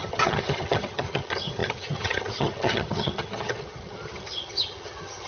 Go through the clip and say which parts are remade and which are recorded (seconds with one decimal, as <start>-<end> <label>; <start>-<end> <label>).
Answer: 0.0-5.3 remade